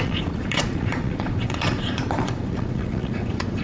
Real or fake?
fake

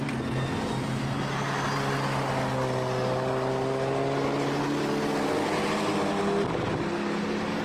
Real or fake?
real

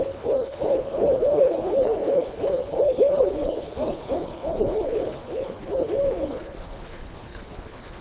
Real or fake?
fake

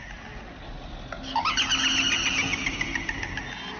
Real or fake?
real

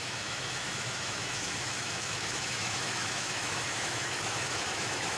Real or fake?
fake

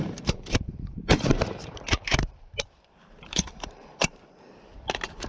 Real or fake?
fake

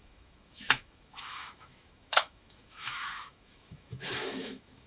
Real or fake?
fake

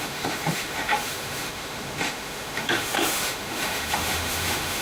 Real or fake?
fake